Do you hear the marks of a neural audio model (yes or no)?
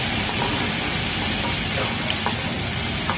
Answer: no